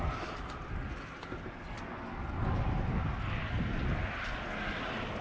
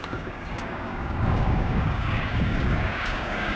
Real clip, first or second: first